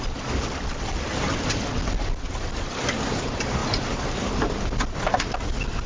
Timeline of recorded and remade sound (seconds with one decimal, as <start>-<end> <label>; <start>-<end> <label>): 0.0-5.9 recorded